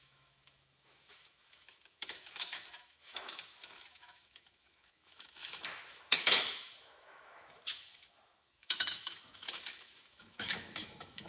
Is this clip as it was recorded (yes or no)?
no